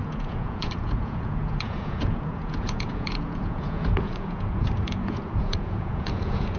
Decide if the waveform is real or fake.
fake